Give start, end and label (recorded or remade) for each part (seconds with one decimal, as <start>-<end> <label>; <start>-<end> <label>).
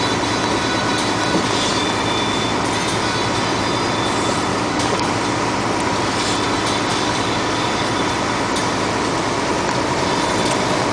0.0-4.5 recorded; 4.5-5.1 remade; 5.1-6.9 recorded; 6.9-7.9 remade; 7.9-10.9 recorded